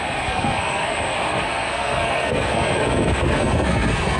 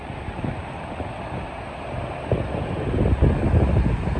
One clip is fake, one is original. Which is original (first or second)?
second